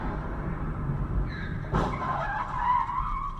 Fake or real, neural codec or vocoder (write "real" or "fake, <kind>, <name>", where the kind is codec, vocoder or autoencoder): real